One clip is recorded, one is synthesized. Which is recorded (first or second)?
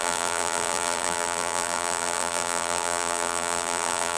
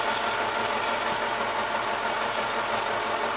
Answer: second